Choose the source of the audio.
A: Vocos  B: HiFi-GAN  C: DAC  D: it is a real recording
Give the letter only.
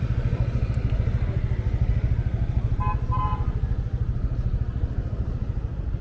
D